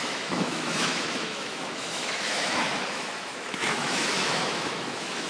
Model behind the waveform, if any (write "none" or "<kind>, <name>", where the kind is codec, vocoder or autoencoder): autoencoder, DAC-VAE